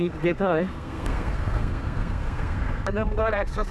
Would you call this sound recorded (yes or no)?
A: no